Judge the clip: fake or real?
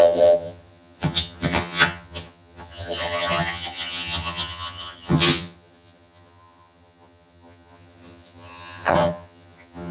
fake